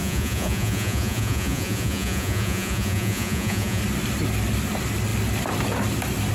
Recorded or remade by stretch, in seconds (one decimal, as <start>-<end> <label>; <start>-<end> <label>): 0.0-3.8 remade; 3.8-6.3 recorded